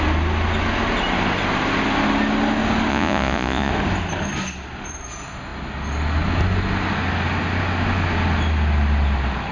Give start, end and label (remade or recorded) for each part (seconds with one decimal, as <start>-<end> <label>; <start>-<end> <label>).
0.0-2.9 recorded; 2.9-3.7 remade; 3.7-9.5 recorded